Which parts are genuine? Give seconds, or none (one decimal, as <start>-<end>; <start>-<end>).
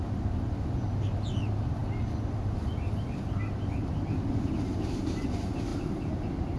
0.0-6.6